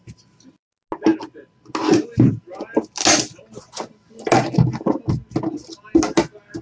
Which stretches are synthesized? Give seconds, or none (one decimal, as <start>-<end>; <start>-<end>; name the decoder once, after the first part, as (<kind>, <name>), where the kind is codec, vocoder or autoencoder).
none